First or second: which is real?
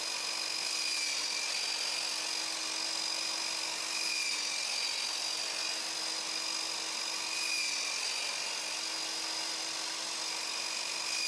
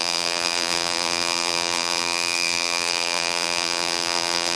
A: first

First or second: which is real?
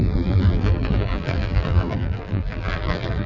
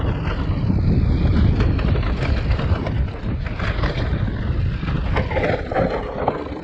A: second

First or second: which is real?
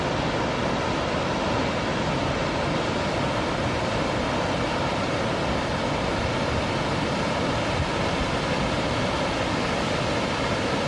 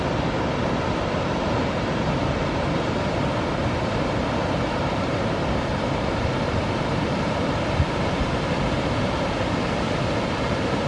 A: first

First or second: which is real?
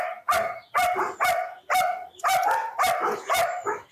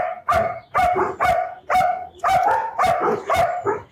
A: first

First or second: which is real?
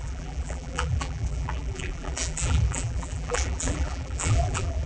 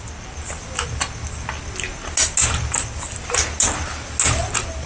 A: second